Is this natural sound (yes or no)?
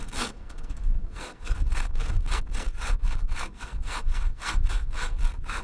no